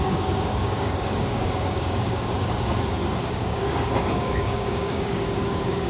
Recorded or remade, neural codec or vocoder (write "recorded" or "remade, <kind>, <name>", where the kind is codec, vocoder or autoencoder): remade, codec, DAC